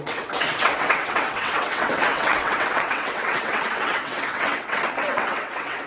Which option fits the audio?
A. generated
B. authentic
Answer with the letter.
A